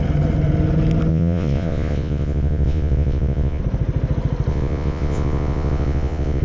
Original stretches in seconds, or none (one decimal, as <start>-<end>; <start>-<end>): 0.0-1.1; 3.6-4.5

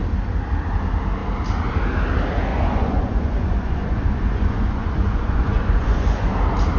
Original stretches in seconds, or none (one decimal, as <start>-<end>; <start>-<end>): 0.0-2.5; 6.3-6.8

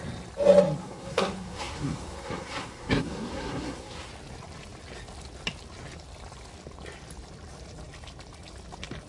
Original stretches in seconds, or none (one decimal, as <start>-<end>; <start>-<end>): 0.0-0.8; 4.1-9.1

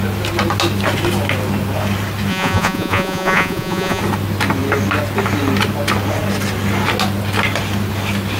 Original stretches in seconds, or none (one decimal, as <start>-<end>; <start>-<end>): 0.0-2.3; 4.0-8.4

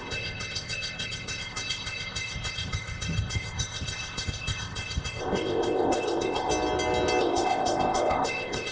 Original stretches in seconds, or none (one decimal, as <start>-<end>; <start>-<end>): 6.5-7.2

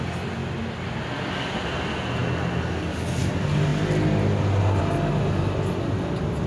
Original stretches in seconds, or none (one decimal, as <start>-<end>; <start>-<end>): 0.0-0.4; 1.0-2.2; 3.2-6.5